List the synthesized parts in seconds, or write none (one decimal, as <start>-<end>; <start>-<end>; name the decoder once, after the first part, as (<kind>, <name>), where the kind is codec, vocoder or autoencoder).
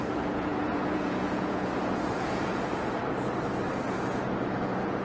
0.0-3.0 (vocoder, Vocos); 3.8-5.0